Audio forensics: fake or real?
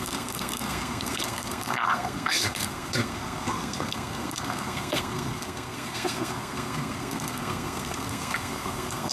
fake